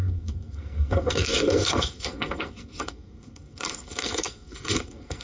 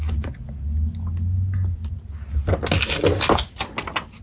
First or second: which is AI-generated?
first